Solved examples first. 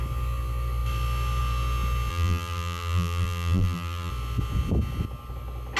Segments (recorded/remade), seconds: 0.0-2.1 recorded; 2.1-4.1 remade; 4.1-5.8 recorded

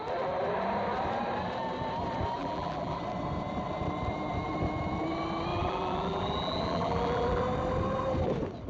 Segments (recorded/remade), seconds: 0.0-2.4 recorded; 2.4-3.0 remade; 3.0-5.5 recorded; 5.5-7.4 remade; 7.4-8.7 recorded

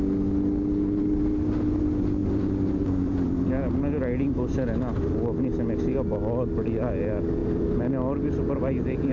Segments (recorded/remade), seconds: 0.0-2.2 recorded; 2.2-3.5 remade; 3.5-7.4 recorded; 7.4-9.1 remade

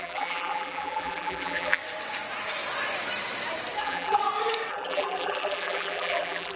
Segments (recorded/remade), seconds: 0.0-1.8 remade; 1.8-3.8 recorded; 3.8-4.2 remade; 4.2-4.7 recorded; 4.7-6.6 remade